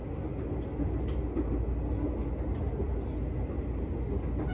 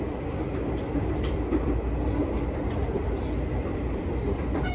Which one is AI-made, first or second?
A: second